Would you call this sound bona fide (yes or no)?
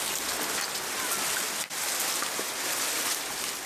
yes